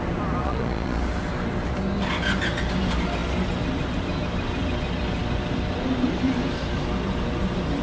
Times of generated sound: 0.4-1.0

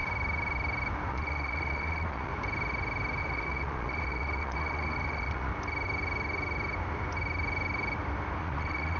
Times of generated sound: 1.1-2.3; 3.2-5.5; 8.4-9.0

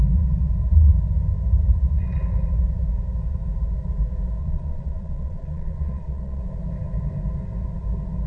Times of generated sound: 4.4-6.4